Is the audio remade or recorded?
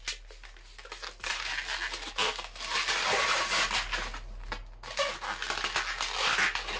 recorded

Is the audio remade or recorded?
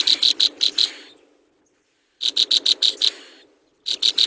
recorded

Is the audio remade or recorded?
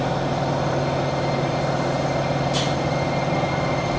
recorded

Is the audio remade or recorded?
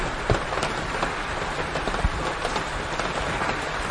recorded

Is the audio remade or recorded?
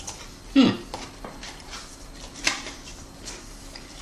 recorded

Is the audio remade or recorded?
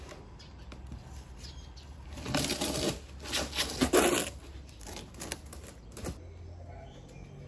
recorded